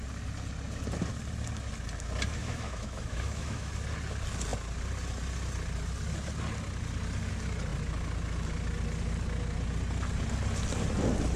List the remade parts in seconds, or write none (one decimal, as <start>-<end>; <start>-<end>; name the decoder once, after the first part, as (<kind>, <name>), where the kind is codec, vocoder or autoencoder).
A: 2.4-3.7 (autoencoder, DAC-VAE)